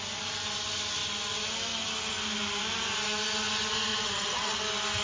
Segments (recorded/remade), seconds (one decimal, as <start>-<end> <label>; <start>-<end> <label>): 0.0-3.9 recorded; 3.9-4.6 remade; 4.6-5.0 recorded